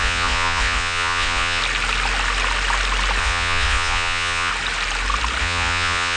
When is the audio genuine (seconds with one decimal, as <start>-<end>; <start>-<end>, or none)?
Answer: 1.6-3.2; 4.5-5.4